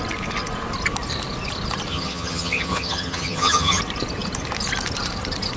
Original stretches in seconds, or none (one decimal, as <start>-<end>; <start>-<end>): 0.0-1.9; 3.8-5.6

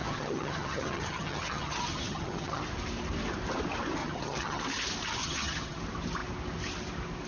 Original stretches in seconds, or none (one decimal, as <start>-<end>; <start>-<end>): 2.6-4.0; 4.6-5.2; 5.8-7.3

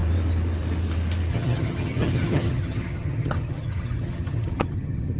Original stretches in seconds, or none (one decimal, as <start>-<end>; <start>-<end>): 0.0-1.3

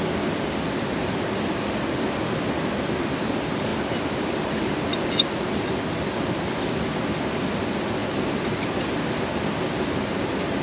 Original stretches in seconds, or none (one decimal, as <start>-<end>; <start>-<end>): 0.0-10.6

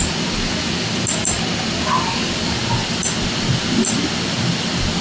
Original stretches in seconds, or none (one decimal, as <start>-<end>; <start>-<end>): 0.0-5.0

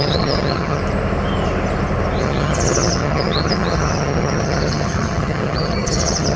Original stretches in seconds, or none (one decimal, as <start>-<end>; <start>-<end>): 0.8-2.2

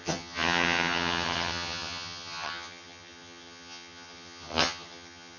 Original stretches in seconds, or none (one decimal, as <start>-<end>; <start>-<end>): none